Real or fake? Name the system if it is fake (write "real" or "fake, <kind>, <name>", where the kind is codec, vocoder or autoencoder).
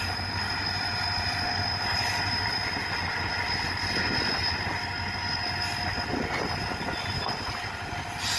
real